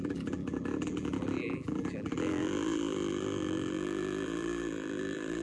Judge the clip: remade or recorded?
remade